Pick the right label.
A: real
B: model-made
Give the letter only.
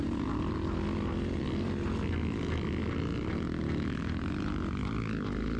A